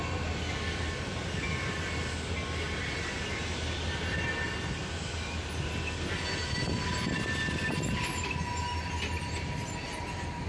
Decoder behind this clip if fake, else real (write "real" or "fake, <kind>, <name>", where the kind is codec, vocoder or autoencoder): real